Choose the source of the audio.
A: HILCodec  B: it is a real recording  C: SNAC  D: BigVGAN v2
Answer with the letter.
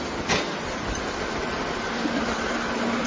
B